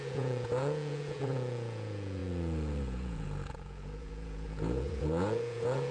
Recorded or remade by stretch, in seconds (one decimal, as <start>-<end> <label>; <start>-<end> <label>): 0.0-5.9 remade